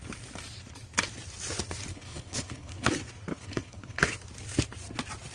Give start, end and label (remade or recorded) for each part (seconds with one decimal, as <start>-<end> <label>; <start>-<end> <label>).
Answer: 0.0-1.9 recorded; 1.9-2.9 remade; 2.9-3.3 recorded; 3.3-4.1 remade; 4.1-5.3 recorded